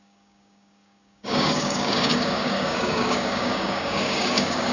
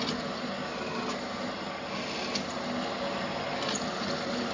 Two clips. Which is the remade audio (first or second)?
first